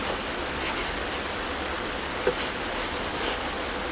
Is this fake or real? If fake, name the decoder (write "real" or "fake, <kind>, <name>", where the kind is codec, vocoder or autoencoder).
real